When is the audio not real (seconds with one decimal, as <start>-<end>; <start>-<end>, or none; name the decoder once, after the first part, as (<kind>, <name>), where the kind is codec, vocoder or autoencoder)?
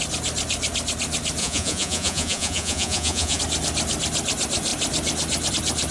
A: 1.4-3.4 (vocoder, Vocos)